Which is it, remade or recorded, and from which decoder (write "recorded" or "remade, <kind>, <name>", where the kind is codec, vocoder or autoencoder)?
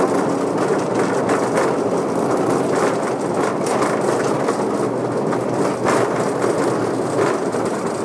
recorded